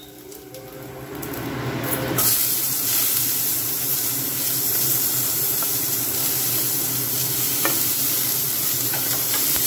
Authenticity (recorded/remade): recorded